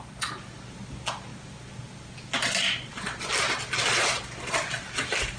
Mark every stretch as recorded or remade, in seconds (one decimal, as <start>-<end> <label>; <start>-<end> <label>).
0.0-5.4 recorded